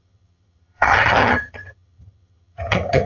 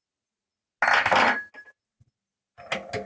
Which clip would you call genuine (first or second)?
second